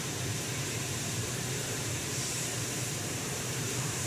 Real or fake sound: fake